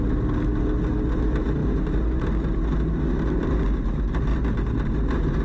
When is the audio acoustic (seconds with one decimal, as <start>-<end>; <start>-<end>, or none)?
0.0-5.4